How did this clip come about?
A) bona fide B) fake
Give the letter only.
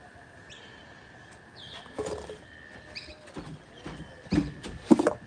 A